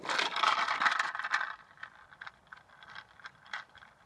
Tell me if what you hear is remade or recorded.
remade